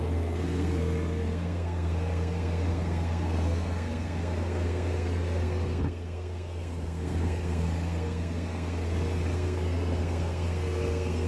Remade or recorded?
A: remade